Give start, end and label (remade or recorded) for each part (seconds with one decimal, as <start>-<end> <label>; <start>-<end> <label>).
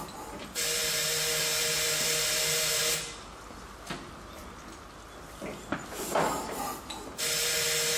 0.0-8.0 recorded